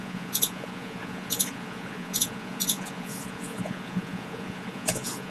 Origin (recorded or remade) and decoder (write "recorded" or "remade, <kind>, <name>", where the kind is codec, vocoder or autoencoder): remade, vocoder, Vocos